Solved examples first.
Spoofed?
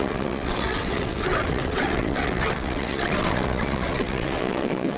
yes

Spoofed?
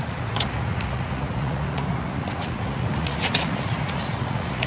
yes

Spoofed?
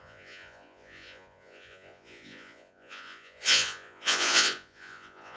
yes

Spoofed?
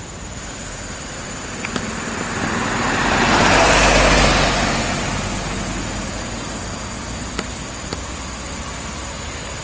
no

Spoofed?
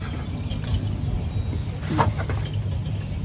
no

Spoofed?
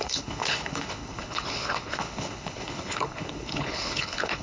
yes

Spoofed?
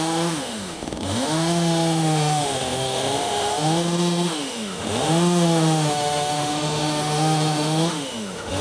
yes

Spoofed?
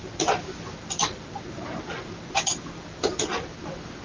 no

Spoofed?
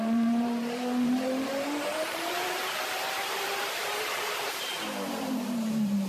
yes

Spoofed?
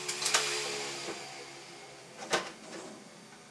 no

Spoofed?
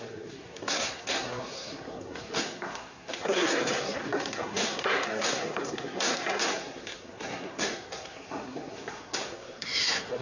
yes